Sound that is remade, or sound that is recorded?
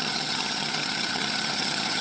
remade